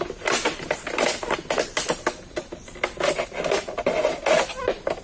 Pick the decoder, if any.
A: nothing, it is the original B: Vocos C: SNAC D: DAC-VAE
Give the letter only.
A